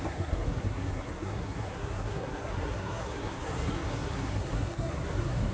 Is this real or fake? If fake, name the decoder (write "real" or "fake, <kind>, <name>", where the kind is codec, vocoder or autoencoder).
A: fake, codec, SNAC